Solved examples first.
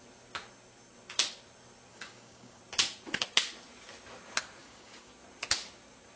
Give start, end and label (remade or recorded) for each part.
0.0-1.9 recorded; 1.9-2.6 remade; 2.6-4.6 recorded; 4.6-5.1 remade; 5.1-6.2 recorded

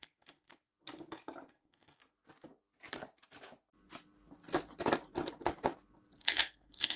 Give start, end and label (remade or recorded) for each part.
0.0-0.7 remade; 0.7-1.5 recorded; 1.5-2.0 remade; 2.0-6.2 recorded; 6.2-7.0 remade

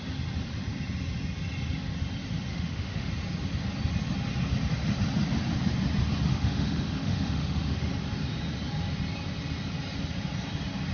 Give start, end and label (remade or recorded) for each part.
0.0-2.5 recorded; 2.5-3.1 remade; 3.1-6.3 recorded; 6.3-7.9 remade; 7.9-10.9 recorded

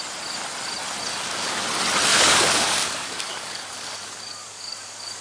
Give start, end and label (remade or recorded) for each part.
0.0-1.1 recorded; 1.1-1.6 remade; 1.6-2.1 recorded; 2.1-5.2 remade

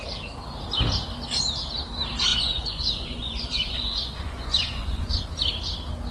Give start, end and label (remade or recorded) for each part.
0.0-2.3 recorded; 2.3-5.3 remade; 5.3-6.1 recorded

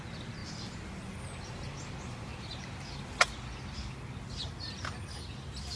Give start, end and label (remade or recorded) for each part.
0.0-5.8 recorded

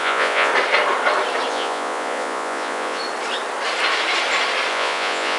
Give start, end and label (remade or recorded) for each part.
0.0-0.5 remade; 0.5-1.5 recorded; 1.5-3.0 remade; 3.0-4.7 recorded; 4.7-5.4 remade

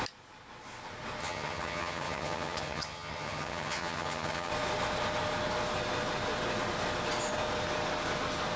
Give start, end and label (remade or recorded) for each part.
0.0-1.2 recorded; 1.2-4.5 remade; 4.5-8.6 recorded